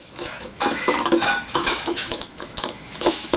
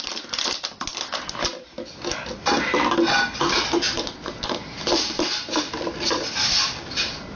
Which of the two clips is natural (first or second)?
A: second